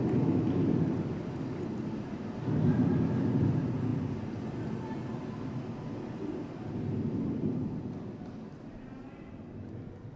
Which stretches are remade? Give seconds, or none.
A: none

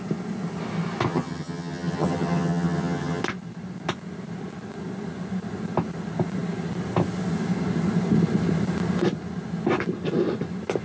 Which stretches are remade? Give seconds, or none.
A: 1.1-3.2 (vocoder, HiFi-GAN)

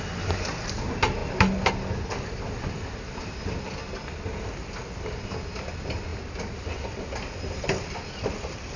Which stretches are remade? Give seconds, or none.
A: none

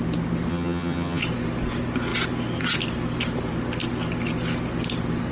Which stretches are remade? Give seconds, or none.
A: 0.5-1.2 (vocoder, HiFi-GAN)

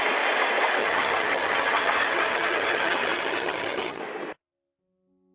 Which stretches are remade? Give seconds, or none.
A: 0.8-4.0 (vocoder, HiFi-GAN)